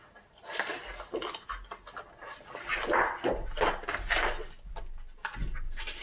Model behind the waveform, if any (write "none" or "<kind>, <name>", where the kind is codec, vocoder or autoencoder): none